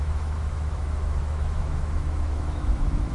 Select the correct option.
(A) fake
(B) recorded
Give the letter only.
A